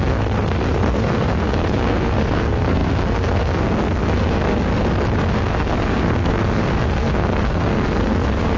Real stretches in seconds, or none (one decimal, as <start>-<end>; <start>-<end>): 4.7-5.3